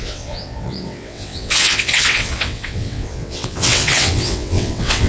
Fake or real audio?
fake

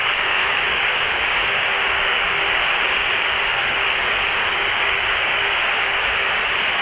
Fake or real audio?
fake